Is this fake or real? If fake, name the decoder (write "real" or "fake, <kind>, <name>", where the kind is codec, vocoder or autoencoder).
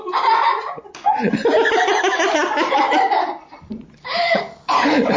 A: real